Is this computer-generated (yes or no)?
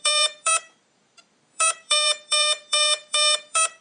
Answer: yes